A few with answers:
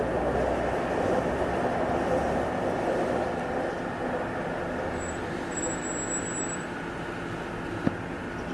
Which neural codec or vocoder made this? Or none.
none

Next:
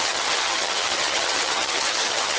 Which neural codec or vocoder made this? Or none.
vocoder, HiFi-GAN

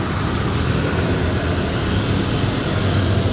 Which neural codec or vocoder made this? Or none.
none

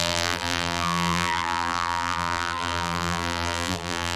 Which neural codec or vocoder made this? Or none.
vocoder, BigVGAN v2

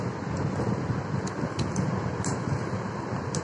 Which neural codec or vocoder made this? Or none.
none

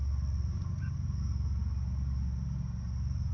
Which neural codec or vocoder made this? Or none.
none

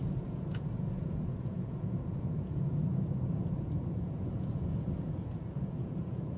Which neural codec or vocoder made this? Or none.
vocoder, Vocos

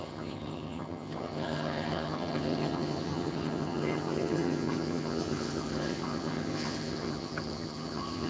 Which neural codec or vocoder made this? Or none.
vocoder, HiFi-GAN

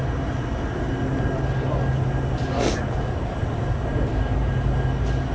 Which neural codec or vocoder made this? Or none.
none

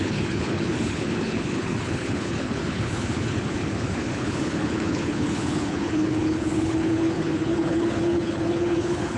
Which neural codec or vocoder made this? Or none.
codec, HILCodec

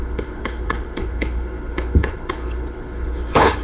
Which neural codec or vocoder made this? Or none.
codec, HILCodec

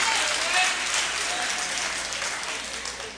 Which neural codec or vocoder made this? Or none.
none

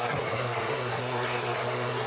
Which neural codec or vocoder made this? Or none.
codec, SNAC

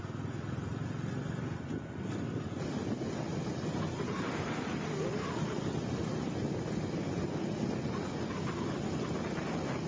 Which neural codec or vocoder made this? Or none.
none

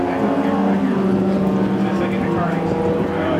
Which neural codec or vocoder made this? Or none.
none